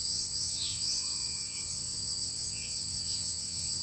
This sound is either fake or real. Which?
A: fake